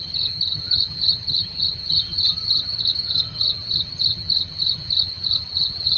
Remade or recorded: remade